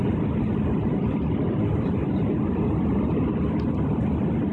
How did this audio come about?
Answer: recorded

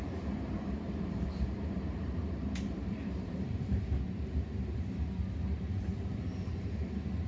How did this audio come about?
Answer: remade